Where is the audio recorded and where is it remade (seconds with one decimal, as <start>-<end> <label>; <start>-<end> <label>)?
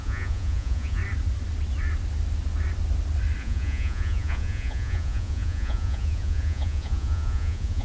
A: 0.0-1.0 remade; 1.0-3.4 recorded; 3.4-7.8 remade